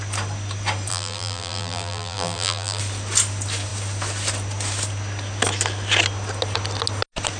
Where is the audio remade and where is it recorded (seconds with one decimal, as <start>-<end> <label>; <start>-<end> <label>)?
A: 0.0-0.9 recorded; 0.9-2.8 remade; 2.8-7.4 recorded

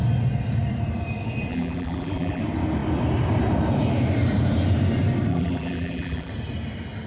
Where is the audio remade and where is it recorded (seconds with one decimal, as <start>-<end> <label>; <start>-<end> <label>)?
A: 0.0-1.5 recorded; 1.5-2.4 remade; 2.4-5.3 recorded; 5.3-6.3 remade; 6.3-7.1 recorded

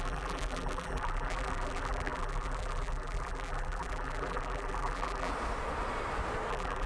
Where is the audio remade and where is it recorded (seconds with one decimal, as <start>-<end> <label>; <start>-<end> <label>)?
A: 0.0-5.3 remade; 5.3-6.5 recorded; 6.5-6.9 remade

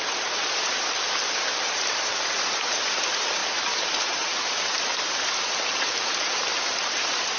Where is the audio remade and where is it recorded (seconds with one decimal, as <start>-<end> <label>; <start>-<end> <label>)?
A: 0.0-0.9 remade; 0.9-1.9 recorded; 1.9-7.4 remade

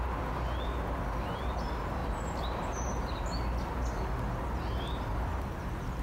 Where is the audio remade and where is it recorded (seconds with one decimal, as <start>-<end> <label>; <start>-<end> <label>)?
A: 0.0-6.0 recorded

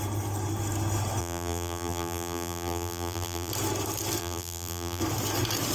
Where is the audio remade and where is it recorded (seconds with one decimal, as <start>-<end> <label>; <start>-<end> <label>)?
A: 0.0-1.2 recorded; 1.2-3.5 remade; 3.5-4.2 recorded; 4.2-5.0 remade; 5.0-5.7 recorded